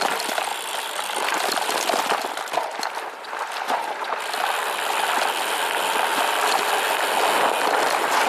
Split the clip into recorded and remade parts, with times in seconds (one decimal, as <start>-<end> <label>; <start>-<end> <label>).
0.0-0.5 recorded; 0.5-4.2 remade; 4.2-6.1 recorded; 6.1-6.7 remade; 6.7-8.3 recorded